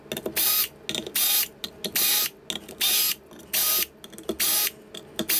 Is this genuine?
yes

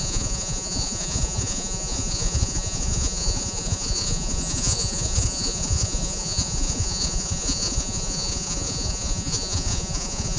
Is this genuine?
no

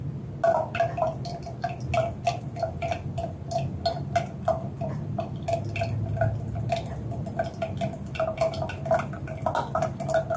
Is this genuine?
yes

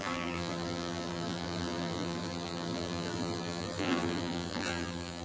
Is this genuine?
no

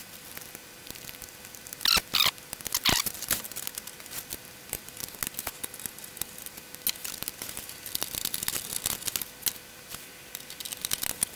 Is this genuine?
yes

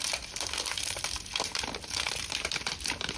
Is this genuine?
no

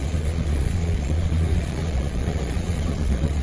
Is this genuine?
no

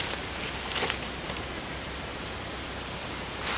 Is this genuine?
yes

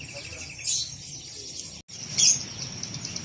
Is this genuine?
yes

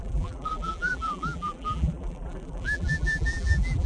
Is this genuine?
no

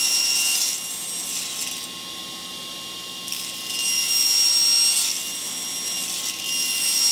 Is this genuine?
yes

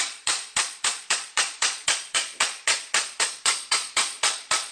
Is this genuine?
no